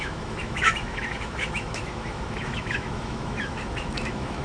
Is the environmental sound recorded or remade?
remade